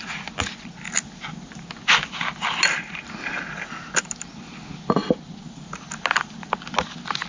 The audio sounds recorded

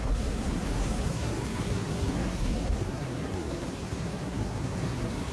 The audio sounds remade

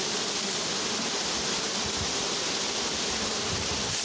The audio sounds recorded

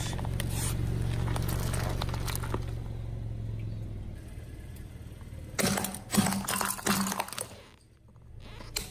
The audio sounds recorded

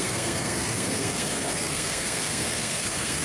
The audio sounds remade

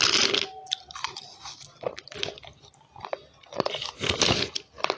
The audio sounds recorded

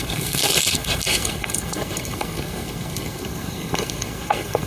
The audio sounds remade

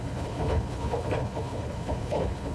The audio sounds remade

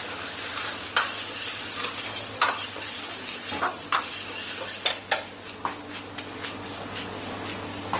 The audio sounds recorded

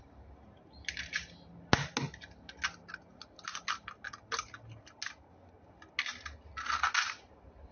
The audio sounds recorded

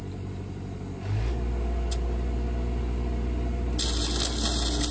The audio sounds recorded